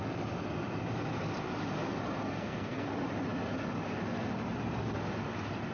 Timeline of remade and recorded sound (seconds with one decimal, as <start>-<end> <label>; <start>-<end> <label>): 0.0-2.2 recorded; 2.2-2.9 remade; 2.9-5.7 recorded